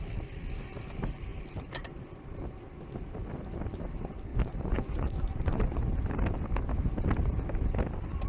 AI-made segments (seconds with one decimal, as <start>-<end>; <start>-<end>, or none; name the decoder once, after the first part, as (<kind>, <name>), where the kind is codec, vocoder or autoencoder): 4.3-5.8 (vocoder, Vocos)